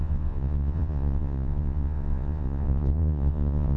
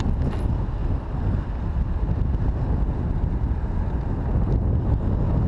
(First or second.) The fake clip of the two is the first